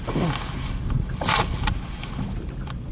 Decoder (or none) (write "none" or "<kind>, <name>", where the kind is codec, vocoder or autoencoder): none